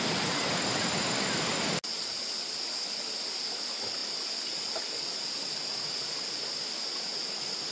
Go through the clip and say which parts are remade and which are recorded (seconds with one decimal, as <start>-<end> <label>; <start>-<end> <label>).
0.0-7.7 recorded